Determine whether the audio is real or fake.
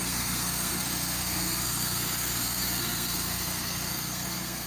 fake